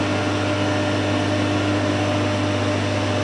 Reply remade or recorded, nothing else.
recorded